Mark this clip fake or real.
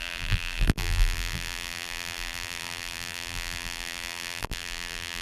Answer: fake